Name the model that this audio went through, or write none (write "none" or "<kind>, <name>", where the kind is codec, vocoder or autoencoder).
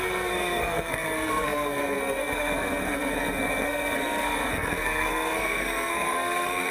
codec, SNAC